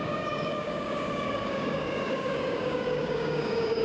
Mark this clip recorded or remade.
remade